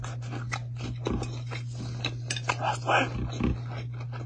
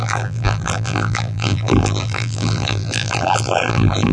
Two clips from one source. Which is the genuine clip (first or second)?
first